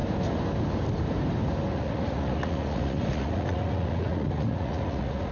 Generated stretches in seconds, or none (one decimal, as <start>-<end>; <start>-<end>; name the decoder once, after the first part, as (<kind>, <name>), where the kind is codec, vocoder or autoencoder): 1.7-5.3 (vocoder, Vocos)